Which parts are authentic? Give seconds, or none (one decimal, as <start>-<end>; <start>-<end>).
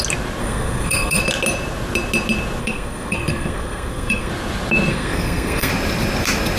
0.0-0.4; 1.2-2.6; 4.3-4.9; 5.7-6.6